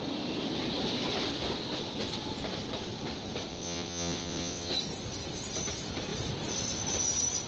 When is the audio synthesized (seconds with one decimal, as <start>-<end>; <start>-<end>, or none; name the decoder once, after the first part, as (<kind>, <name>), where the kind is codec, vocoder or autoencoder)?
3.5-4.7 (vocoder, WaveNeXt)